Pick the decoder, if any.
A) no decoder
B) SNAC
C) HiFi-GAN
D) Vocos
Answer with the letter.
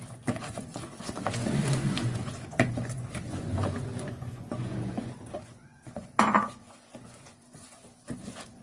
D